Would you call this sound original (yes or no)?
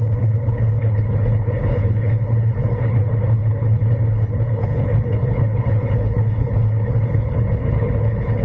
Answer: no